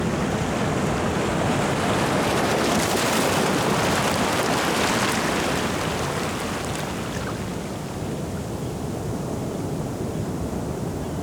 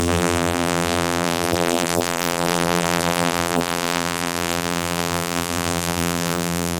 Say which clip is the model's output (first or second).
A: second